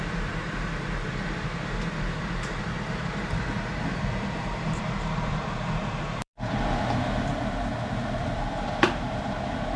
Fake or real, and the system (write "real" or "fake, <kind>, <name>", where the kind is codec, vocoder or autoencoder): fake, vocoder, BigVGAN v2